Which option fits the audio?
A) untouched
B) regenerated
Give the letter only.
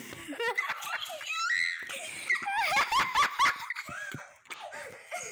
A